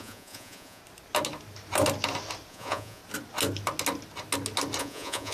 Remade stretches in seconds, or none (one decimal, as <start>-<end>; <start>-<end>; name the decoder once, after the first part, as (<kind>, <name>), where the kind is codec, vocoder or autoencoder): 0.0-0.8 (vocoder, Vocos); 2.5-3.0; 4.8-5.3